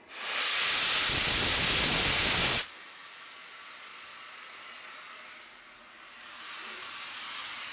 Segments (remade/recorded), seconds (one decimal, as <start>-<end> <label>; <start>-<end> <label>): 0.0-3.9 recorded; 3.9-4.9 remade; 4.9-7.7 recorded